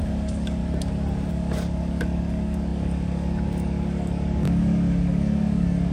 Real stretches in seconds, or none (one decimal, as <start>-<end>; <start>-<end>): 0.6-1.3